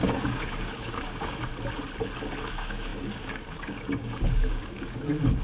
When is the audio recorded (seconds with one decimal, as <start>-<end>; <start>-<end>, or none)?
1.5-2.5

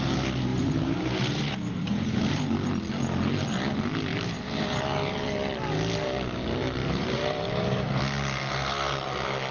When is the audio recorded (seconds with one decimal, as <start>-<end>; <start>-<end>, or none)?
0.0-0.5; 2.4-4.1; 4.8-6.8; 8.0-9.5

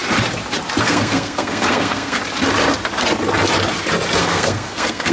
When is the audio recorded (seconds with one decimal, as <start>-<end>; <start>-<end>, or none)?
0.0-0.8; 2.2-4.2

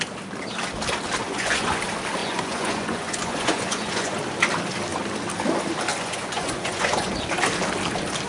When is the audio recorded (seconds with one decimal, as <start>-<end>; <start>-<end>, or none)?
0.0-1.2; 1.8-2.2; 4.2-5.9; 7.1-8.3

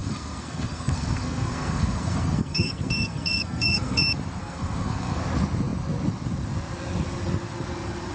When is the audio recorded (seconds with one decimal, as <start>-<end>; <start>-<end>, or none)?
4.0-4.4; 5.2-8.1